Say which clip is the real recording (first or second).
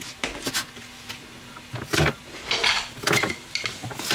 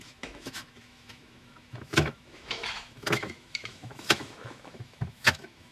first